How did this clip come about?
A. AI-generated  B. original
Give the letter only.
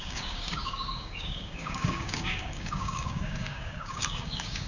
A